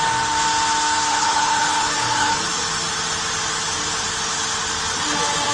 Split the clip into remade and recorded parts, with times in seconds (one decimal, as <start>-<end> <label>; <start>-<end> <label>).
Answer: 0.0-1.1 recorded; 1.1-2.4 remade; 2.4-5.5 recorded